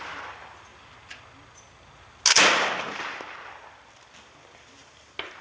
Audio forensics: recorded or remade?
recorded